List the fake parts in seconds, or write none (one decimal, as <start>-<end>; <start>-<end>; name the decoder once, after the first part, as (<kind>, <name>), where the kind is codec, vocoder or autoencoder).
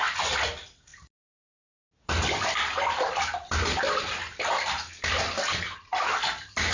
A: none